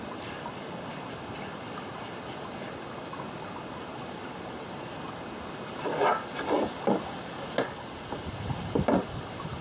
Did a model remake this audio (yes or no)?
no